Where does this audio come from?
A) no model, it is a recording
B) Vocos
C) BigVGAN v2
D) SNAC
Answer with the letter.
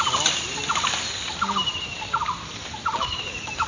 C